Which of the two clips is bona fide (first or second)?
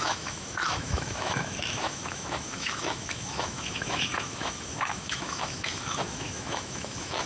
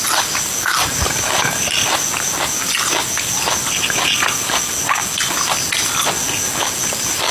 second